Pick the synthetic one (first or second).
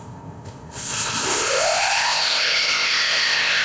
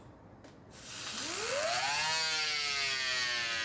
first